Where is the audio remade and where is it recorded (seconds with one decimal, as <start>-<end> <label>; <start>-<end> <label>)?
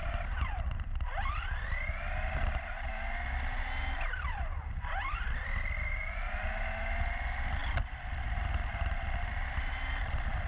0.0-10.5 recorded